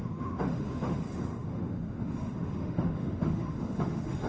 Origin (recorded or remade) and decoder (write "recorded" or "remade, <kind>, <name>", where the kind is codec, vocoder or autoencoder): remade, autoencoder, DAC-VAE